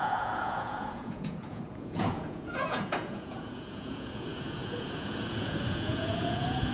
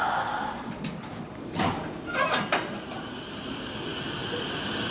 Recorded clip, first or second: second